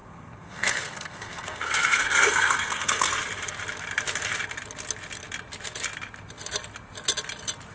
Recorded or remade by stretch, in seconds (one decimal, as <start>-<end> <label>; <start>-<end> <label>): 0.0-3.1 remade; 3.1-7.7 recorded